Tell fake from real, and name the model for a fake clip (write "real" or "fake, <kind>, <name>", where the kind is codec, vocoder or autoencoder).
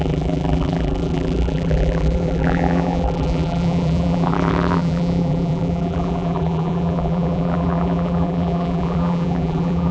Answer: fake, vocoder, BigVGAN v2